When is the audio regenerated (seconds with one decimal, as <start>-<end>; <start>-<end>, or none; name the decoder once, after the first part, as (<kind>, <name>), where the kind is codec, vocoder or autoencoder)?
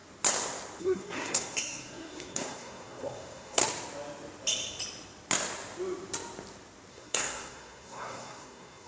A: 0.8-3.6 (codec, SNAC); 6.9-8.9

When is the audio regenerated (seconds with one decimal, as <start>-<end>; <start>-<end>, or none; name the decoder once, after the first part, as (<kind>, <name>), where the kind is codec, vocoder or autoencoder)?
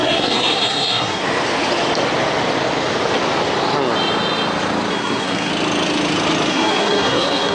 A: 0.0-1.2 (codec, SNAC); 4.9-5.5; 6.5-7.5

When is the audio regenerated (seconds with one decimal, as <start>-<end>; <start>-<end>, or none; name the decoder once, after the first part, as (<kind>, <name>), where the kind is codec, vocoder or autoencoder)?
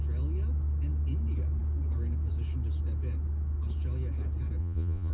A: 4.6-5.1 (vocoder, Vocos)